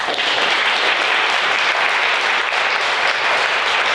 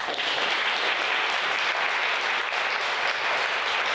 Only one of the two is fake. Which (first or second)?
first